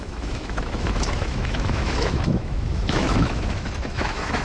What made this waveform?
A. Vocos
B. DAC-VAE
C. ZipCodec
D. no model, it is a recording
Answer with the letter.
B